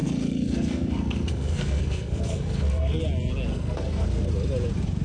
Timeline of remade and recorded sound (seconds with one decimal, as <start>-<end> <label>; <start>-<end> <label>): 0.0-3.0 remade; 3.0-3.5 recorded; 3.5-4.3 remade; 4.3-5.0 recorded